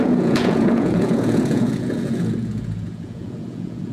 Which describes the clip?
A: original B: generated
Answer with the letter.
B